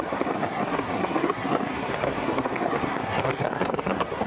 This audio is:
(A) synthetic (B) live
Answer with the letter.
A